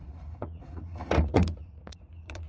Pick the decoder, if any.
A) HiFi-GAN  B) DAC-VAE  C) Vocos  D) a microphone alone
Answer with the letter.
C